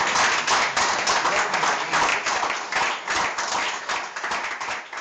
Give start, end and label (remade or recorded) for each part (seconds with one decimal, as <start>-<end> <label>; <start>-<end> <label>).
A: 0.0-5.0 recorded